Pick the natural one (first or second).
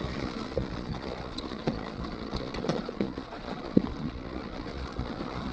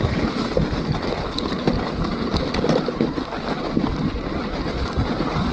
second